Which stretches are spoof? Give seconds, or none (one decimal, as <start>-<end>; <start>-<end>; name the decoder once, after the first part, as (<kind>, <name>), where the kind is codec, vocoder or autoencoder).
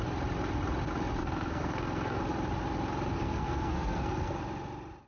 1.2-2.2 (codec, SNAC); 3.1-4.4